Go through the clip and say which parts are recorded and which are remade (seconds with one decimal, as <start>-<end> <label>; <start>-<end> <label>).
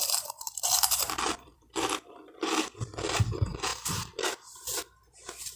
0.0-2.3 remade; 2.3-3.7 recorded; 3.7-4.8 remade; 4.8-5.6 recorded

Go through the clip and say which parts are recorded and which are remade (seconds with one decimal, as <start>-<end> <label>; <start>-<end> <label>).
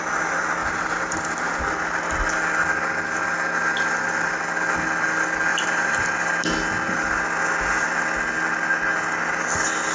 0.0-0.6 recorded; 0.6-1.6 remade; 1.6-5.5 recorded; 5.5-6.1 remade; 6.1-9.9 recorded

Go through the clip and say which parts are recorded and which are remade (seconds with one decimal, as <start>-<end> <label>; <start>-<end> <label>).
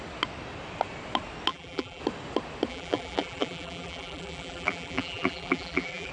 0.0-1.5 recorded; 1.5-2.0 remade; 2.0-2.7 recorded; 2.7-6.1 remade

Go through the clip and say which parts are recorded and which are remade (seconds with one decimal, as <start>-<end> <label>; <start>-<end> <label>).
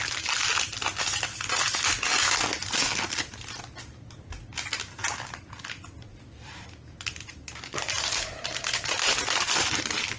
0.0-6.1 recorded; 6.1-10.2 remade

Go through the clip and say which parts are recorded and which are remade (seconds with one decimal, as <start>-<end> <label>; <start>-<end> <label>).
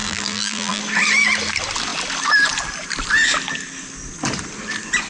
0.0-0.8 remade; 0.8-5.1 recorded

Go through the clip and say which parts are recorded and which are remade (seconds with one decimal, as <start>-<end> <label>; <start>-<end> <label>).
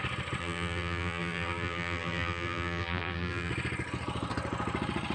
0.0-0.4 recorded; 0.4-3.5 remade; 3.5-5.1 recorded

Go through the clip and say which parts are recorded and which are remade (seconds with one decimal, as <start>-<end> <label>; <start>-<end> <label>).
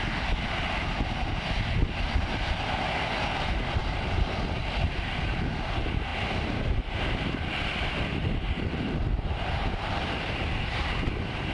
0.0-3.8 recorded; 3.8-4.6 remade; 4.6-6.1 recorded; 6.1-8.7 remade; 8.7-11.5 recorded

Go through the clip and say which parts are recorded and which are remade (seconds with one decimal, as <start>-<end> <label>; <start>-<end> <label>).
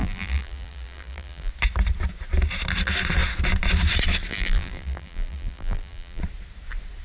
0.0-1.5 remade; 1.5-4.3 recorded; 4.3-6.2 remade; 6.2-7.0 recorded